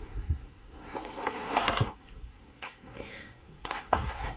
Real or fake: fake